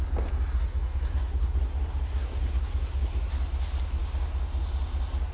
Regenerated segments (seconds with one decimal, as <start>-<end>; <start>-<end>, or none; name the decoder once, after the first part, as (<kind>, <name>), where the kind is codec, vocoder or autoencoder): 0.5-3.3 (codec, SNAC)

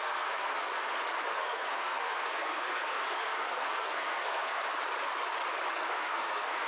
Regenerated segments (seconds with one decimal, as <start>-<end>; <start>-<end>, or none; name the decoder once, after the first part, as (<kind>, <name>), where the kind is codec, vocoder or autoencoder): 0.0-0.7 (codec, SNAC); 1.3-4.6; 5.7-6.7